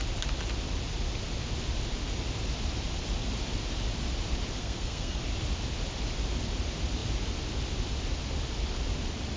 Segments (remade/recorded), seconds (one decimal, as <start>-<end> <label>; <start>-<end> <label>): 0.0-4.6 recorded; 4.6-5.2 remade; 5.2-9.4 recorded